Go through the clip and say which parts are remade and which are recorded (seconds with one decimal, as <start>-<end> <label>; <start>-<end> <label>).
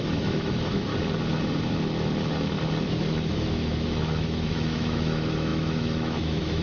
0.0-0.9 remade; 0.9-3.3 recorded; 3.3-6.6 remade